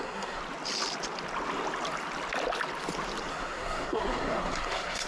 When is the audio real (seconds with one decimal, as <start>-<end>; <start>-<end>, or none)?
0.4-3.3